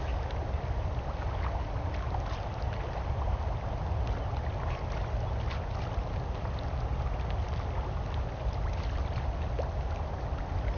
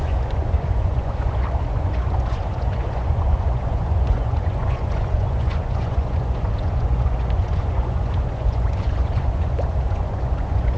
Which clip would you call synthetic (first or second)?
second